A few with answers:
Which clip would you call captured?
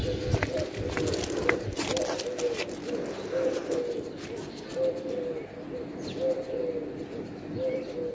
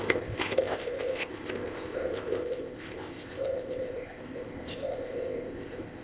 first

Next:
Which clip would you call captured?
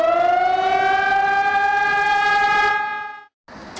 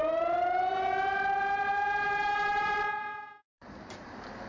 first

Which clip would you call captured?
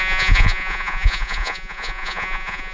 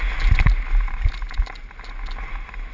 second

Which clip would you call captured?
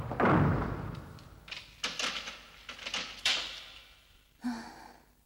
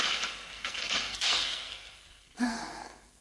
first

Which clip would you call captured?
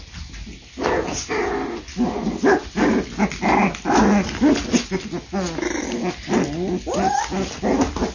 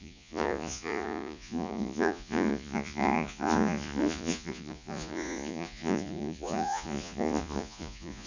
first